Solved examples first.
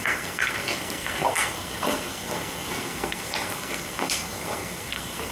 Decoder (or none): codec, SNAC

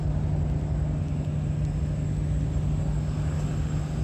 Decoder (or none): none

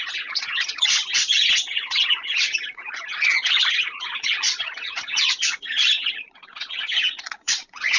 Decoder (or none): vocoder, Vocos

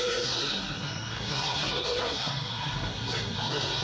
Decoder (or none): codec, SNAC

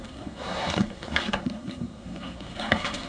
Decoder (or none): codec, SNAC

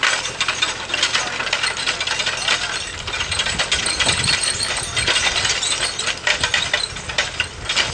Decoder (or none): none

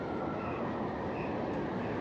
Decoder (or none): none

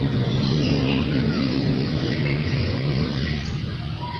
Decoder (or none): vocoder, Vocos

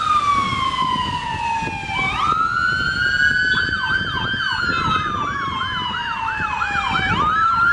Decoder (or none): none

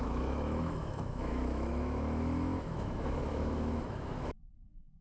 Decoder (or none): autoencoder, DAC-VAE